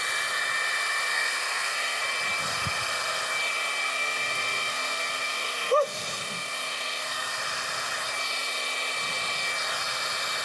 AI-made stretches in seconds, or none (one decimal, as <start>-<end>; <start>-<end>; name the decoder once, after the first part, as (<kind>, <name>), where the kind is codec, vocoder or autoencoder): 1.1-2.0 (codec, SNAC); 3.9-7.4